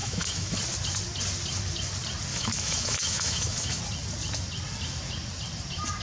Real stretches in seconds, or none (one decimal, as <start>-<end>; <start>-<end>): 0.6-2.3; 3.8-6.0

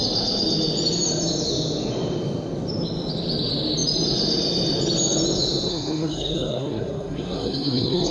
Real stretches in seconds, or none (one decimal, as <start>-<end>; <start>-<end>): 0.0-5.7